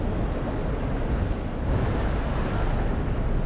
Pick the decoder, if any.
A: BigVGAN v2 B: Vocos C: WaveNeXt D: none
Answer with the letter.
D